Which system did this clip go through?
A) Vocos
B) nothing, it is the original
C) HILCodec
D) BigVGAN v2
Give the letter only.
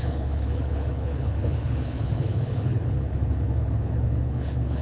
C